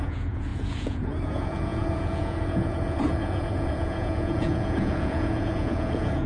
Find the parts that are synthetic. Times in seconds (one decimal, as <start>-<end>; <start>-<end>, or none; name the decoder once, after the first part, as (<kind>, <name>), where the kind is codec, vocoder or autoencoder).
0.0-6.3 (vocoder, Vocos)